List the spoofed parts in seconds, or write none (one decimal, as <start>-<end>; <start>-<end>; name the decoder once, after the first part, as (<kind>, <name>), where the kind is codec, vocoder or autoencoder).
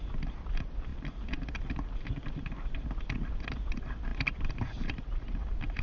4.1-5.8 (vocoder, BigVGAN v2)